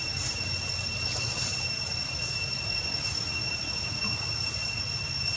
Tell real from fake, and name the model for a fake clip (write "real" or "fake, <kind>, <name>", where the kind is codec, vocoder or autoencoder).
real